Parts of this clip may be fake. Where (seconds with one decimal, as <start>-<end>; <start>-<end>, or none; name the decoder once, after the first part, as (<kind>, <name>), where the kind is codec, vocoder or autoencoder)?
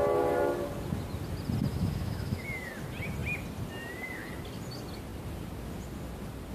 1.7-2.7 (autoencoder, DAC-VAE)